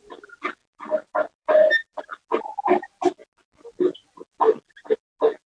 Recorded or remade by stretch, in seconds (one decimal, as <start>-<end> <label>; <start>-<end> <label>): 0.0-0.6 recorded; 0.6-2.0 remade; 2.0-5.5 recorded